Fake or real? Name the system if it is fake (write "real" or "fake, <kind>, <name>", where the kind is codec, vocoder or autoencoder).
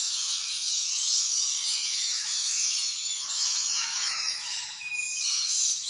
fake, autoencoder, DAC-VAE